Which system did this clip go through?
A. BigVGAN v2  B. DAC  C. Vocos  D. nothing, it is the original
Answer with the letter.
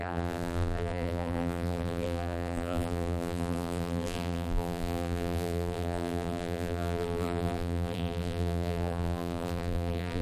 A